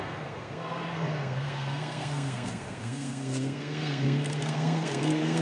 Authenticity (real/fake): fake